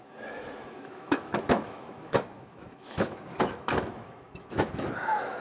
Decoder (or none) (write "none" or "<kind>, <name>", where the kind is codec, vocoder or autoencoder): autoencoder, DAC-VAE